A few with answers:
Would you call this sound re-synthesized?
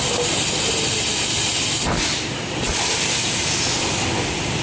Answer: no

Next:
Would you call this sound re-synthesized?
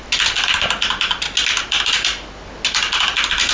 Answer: no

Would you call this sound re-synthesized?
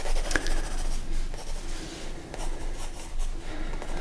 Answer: no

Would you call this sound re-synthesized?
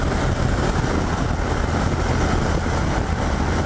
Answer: no